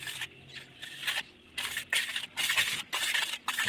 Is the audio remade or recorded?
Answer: recorded